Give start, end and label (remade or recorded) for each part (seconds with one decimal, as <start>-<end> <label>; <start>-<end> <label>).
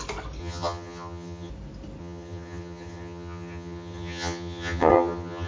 0.0-0.4 recorded; 0.4-1.5 remade; 1.5-2.0 recorded; 2.0-5.5 remade